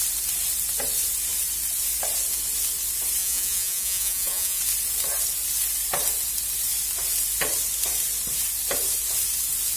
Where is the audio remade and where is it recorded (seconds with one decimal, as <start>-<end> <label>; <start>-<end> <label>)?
0.0-3.2 recorded; 3.2-4.6 remade; 4.6-9.8 recorded